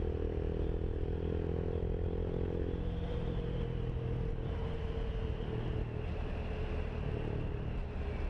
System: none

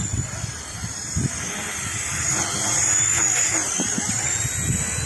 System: none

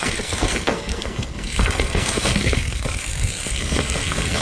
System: codec, SNAC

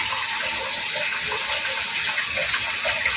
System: none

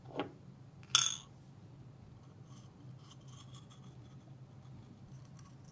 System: none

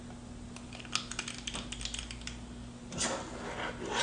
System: none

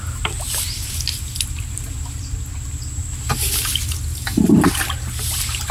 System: none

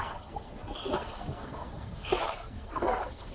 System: codec, SNAC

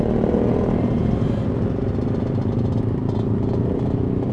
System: none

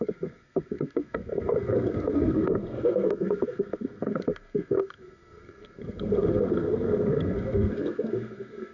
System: codec, SNAC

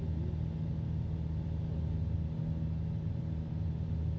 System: none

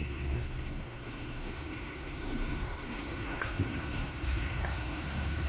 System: codec, SNAC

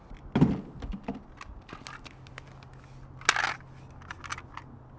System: none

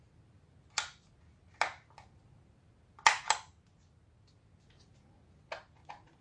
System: none